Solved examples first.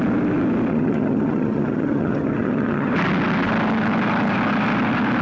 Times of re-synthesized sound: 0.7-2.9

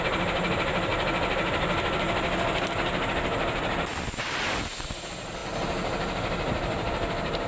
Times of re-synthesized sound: none